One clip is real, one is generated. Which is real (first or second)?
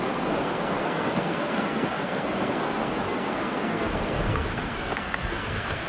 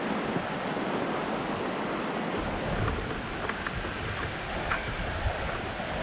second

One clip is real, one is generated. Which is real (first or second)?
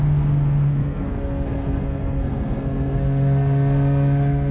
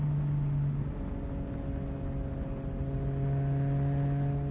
second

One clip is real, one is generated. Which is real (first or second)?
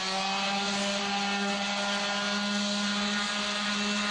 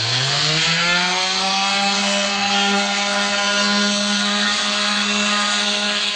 first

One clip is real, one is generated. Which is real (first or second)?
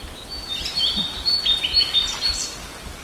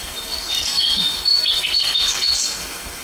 first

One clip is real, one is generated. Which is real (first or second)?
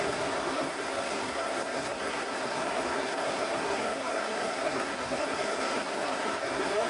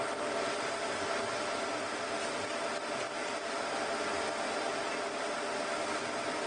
second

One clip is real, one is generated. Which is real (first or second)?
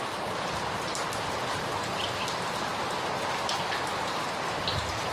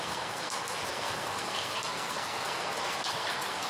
first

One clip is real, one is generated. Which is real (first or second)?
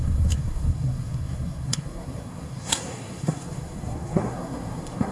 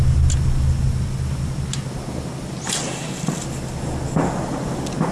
second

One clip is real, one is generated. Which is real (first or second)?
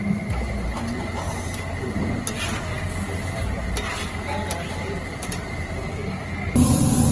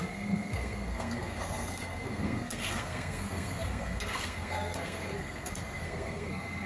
first